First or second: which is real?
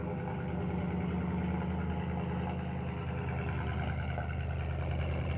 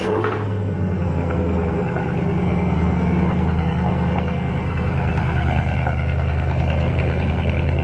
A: first